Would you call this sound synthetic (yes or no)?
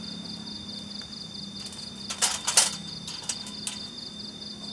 no